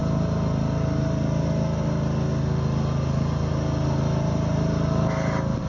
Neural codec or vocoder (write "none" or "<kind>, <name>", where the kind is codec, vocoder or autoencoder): none